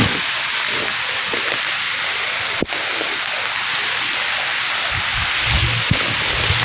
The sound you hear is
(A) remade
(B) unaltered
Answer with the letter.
B